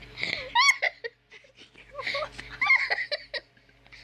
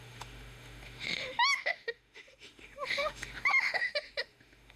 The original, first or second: first